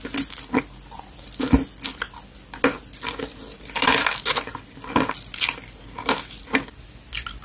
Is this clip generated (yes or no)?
no